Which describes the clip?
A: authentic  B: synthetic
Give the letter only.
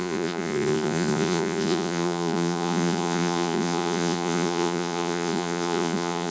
B